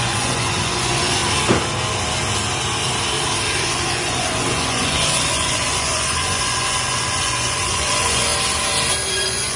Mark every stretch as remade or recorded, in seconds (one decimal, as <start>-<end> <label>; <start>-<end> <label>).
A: 0.0-1.2 remade; 1.2-3.6 recorded; 3.6-8.3 remade; 8.3-9.1 recorded; 9.1-9.6 remade